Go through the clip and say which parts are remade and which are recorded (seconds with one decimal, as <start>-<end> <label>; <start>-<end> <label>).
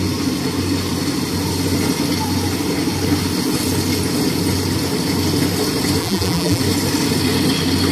0.0-6.0 recorded; 6.0-6.6 remade; 6.6-7.9 recorded